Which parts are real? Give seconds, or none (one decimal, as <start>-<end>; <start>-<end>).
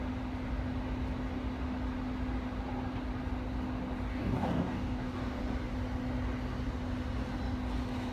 0.0-4.1; 5.4-8.1